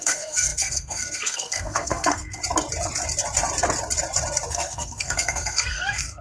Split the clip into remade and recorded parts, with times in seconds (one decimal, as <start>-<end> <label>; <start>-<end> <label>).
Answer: 0.0-2.4 remade; 2.4-4.5 recorded; 4.5-6.2 remade